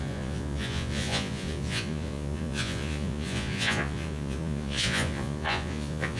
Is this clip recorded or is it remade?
remade